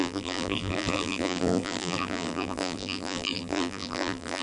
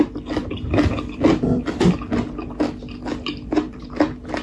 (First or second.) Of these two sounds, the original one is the second